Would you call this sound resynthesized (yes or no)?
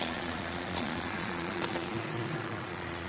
yes